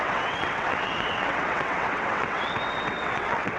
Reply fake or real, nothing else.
fake